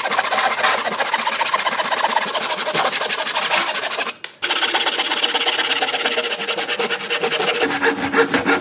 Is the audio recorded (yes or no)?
yes